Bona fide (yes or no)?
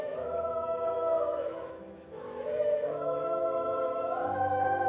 no